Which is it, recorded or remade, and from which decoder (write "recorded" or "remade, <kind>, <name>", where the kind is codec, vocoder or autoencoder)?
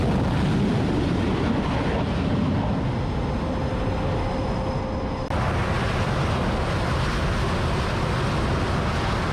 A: recorded